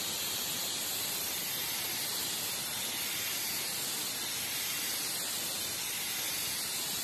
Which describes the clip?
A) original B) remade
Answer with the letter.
A